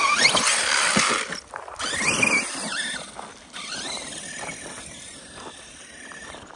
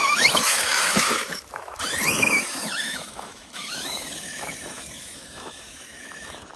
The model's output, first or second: second